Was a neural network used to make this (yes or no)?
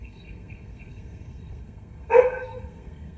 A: yes